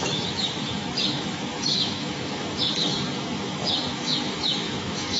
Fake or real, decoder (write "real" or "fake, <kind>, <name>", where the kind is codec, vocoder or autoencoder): fake, autoencoder, DAC-VAE